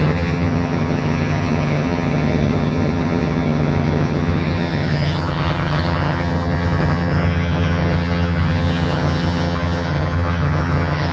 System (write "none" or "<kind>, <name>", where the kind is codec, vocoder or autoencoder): vocoder, HiFi-GAN